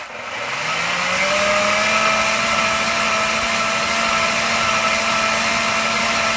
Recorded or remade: recorded